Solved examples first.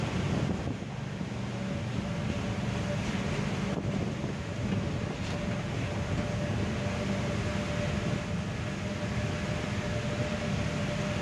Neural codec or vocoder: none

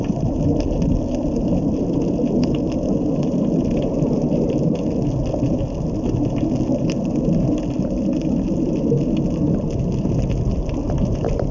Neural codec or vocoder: none